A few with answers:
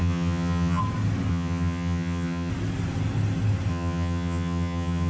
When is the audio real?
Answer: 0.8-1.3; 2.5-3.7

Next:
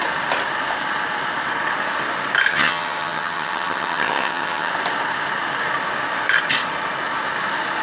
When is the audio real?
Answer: 0.0-2.5; 4.7-7.8

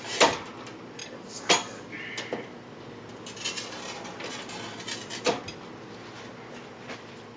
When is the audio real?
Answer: 0.0-7.4

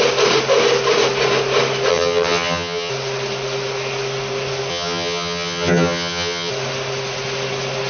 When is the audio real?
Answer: 0.0-1.9; 2.9-4.7; 6.5-7.9

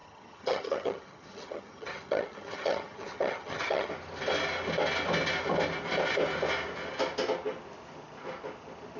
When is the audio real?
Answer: 3.9-9.0